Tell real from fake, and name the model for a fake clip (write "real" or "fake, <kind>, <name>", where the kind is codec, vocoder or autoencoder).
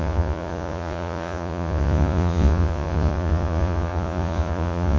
fake, vocoder, Vocos